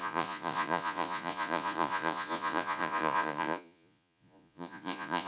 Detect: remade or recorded remade